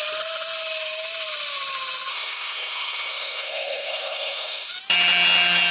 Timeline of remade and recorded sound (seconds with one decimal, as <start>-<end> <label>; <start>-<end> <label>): 0.0-2.1 recorded; 2.1-4.7 remade; 4.7-5.7 recorded